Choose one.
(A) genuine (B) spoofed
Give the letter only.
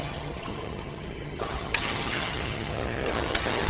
B